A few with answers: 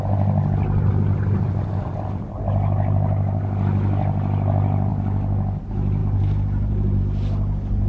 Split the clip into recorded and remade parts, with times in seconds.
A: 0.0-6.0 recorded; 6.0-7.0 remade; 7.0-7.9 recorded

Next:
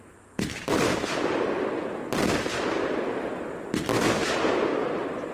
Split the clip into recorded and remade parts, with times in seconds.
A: 0.0-0.9 remade; 0.9-4.1 recorded; 4.1-5.3 remade